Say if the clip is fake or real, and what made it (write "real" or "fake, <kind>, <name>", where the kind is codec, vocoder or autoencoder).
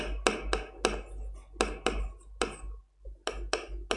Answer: real